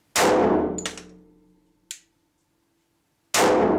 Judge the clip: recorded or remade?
recorded